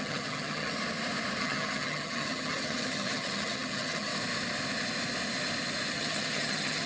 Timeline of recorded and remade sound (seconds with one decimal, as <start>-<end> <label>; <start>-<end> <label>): 0.0-0.7 remade; 0.7-1.4 recorded; 1.4-4.1 remade; 4.1-5.9 recorded; 5.9-6.9 remade